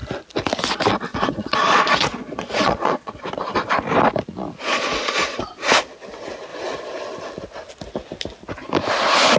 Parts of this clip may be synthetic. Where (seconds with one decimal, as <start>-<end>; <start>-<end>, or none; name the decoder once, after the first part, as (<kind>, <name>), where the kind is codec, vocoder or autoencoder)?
1.1-3.2 (vocoder, Vocos); 4.7-5.4